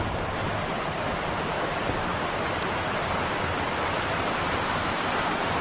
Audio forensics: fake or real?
fake